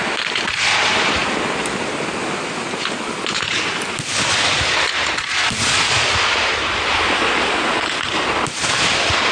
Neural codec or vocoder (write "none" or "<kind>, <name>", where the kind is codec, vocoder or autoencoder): none